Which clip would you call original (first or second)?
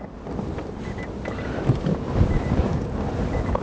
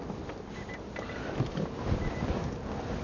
second